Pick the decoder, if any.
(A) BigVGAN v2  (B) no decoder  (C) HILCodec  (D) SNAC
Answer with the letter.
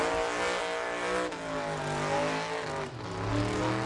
B